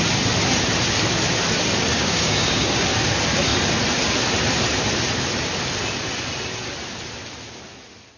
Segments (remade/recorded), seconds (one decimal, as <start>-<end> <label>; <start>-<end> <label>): 0.0-1.9 recorded; 1.9-2.8 remade; 2.8-8.2 recorded